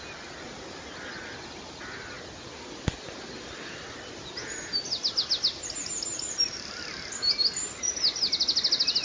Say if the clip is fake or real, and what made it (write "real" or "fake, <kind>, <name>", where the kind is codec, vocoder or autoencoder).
real